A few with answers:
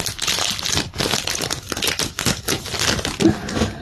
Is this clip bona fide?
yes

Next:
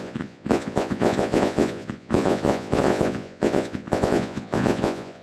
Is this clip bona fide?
no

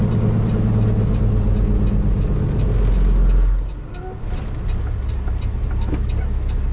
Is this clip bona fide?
yes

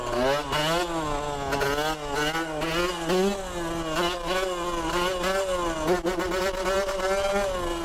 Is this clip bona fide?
yes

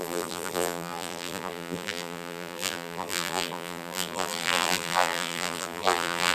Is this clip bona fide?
no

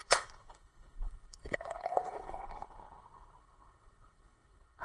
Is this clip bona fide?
no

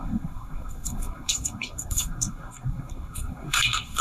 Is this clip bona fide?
no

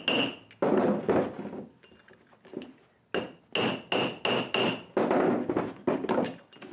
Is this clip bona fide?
yes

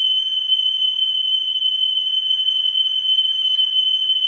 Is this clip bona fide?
no